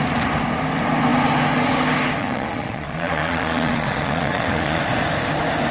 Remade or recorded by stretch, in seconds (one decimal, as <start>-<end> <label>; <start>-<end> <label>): 0.0-2.2 recorded; 2.2-4.8 remade; 4.8-5.7 recorded